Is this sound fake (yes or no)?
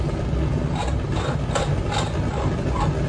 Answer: no